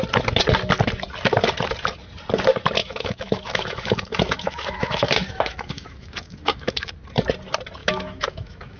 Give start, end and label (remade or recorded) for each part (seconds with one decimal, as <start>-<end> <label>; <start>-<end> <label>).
0.0-2.8 recorded; 2.8-6.9 remade; 6.9-7.8 recorded; 7.8-8.8 remade